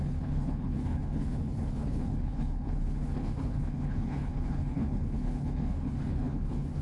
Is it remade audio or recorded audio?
remade